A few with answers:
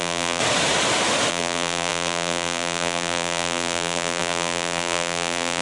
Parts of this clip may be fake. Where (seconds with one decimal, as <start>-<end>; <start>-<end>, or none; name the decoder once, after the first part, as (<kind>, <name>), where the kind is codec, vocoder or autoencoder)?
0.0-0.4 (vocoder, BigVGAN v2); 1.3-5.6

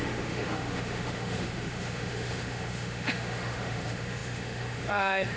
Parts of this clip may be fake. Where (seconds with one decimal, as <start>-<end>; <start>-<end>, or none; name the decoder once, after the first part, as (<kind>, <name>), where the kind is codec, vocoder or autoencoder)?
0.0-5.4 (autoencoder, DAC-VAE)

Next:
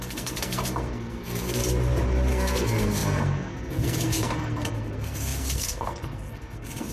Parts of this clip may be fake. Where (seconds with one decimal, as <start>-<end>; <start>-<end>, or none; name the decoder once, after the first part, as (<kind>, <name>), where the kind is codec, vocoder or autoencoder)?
0.0-1.6 (codec, SNAC); 2.3-6.9

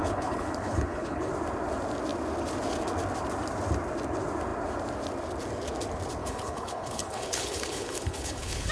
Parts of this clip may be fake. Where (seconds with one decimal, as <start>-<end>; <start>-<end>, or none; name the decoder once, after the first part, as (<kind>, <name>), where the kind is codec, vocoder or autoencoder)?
0.0-1.3 (codec, HILCodec); 6.2-8.7

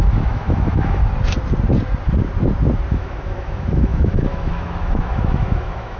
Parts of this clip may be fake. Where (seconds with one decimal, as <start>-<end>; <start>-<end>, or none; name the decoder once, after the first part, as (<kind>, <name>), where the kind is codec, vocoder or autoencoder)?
0.0-1.0 (autoencoder, DAC-VAE); 2.9-6.0